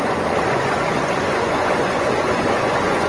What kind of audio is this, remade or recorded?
remade